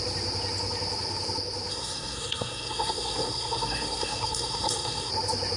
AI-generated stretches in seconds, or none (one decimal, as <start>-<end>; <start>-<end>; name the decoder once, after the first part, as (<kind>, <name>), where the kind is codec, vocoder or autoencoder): 1.7-5.1 (codec, SNAC)